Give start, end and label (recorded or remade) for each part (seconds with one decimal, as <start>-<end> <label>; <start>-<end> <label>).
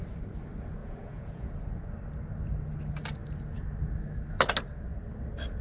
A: 0.0-0.8 recorded; 0.8-1.5 remade; 1.5-5.6 recorded